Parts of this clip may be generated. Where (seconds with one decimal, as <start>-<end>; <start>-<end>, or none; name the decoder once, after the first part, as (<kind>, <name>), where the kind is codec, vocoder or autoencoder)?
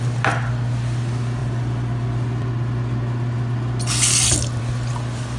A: none